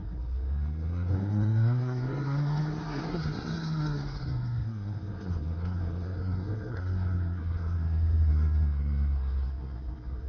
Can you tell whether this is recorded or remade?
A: remade